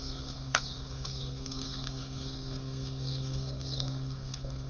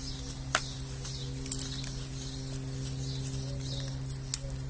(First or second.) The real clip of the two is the second